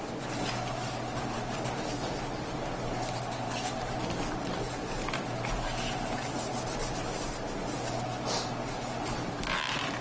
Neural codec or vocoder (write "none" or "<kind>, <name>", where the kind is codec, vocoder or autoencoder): none